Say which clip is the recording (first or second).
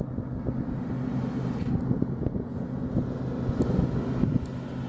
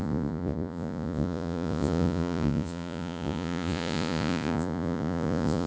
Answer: first